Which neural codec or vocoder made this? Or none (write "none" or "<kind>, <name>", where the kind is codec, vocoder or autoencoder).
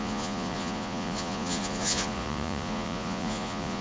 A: vocoder, Vocos